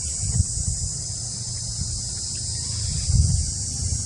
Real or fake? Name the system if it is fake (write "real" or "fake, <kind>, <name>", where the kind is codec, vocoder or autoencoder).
real